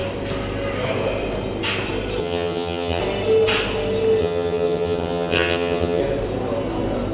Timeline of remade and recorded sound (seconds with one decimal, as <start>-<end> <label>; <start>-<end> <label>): 0.0-2.2 recorded; 2.2-3.0 remade; 3.0-4.2 recorded; 4.2-6.0 remade; 6.0-7.1 recorded